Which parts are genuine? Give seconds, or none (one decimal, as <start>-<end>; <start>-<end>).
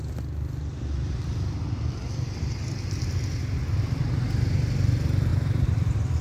0.0-5.3